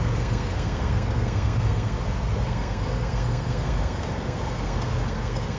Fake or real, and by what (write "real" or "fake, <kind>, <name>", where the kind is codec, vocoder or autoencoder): fake, codec, SNAC